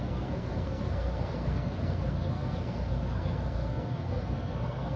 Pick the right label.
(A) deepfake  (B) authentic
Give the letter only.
A